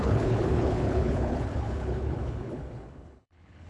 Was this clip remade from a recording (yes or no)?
yes